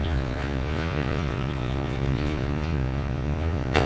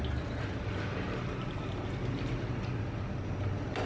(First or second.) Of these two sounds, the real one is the second